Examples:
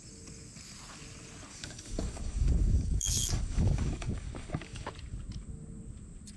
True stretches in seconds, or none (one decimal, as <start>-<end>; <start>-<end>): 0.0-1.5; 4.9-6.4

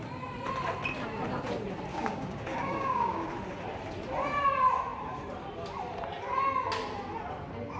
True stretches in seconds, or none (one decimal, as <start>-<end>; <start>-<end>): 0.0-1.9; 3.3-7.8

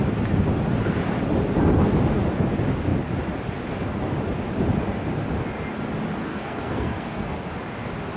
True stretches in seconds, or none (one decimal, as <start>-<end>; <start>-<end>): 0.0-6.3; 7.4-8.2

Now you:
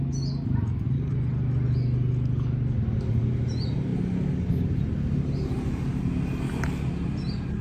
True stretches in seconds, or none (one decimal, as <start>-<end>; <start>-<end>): 0.0-7.6

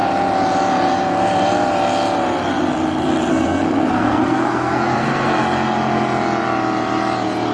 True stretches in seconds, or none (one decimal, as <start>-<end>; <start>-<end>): 0.0-3.3; 5.4-7.5

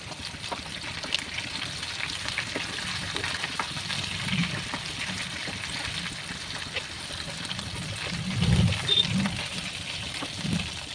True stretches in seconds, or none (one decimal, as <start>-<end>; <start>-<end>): 0.0-10.9